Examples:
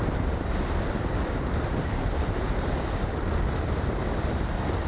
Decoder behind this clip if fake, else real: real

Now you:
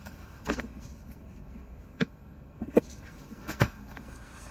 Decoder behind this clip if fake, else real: fake, codec, SNAC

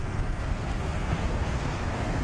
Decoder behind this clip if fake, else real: fake, codec, SNAC